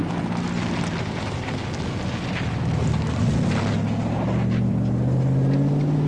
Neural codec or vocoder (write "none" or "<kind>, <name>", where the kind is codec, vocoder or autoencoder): none